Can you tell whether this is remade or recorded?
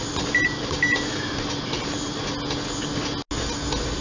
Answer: recorded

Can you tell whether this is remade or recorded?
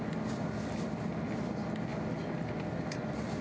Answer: recorded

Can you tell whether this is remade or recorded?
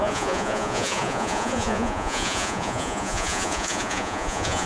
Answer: remade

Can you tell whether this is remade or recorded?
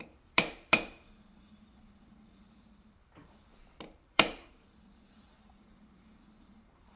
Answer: remade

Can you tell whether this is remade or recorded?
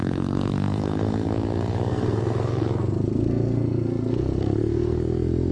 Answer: remade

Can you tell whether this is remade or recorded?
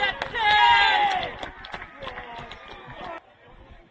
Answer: recorded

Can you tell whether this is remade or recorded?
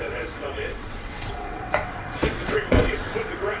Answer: remade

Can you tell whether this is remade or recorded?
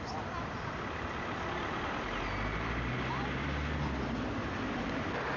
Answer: recorded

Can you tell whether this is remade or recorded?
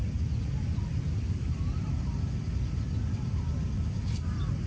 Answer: recorded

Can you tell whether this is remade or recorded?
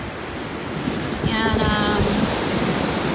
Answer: recorded